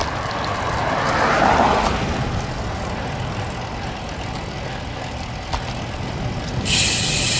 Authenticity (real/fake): real